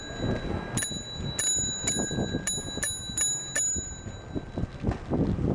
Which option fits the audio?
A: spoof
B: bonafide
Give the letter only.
B